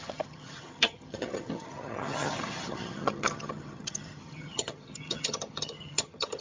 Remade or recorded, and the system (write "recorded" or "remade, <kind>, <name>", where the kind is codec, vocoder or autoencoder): remade, vocoder, HiFi-GAN